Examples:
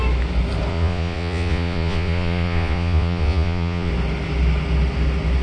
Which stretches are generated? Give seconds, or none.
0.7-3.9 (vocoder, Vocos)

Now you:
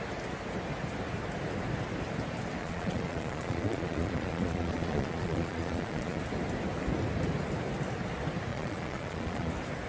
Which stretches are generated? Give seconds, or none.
2.6-6.2 (vocoder, Vocos); 8.5-9.5

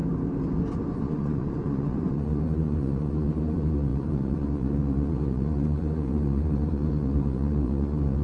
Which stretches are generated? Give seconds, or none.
0.9-8.2 (vocoder, Vocos)

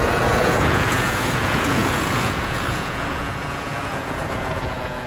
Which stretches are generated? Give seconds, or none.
0.0-5.1 (vocoder, Vocos)

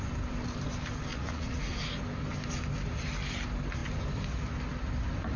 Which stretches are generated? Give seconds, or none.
1.1-1.7 (vocoder, Vocos)